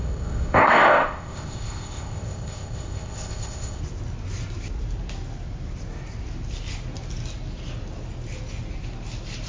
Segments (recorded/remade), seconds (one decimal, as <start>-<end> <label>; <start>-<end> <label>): 0.0-3.8 remade; 3.8-9.5 recorded